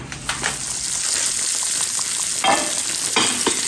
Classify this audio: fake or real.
real